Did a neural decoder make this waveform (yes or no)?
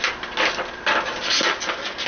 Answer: no